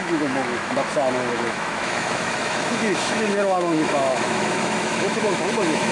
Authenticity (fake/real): fake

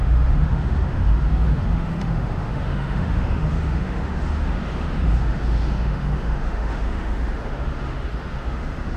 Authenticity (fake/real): fake